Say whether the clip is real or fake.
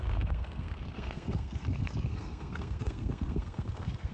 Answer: fake